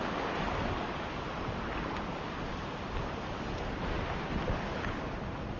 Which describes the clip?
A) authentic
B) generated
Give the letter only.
A